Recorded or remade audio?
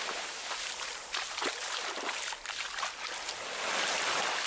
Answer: recorded